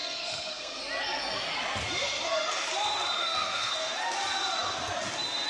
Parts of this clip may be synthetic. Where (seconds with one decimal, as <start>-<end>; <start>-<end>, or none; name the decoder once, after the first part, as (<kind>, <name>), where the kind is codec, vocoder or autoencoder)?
0.0-0.8 (codec, SNAC); 3.2-3.7